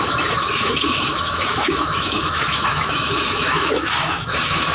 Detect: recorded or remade remade